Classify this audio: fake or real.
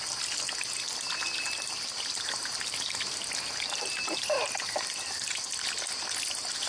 real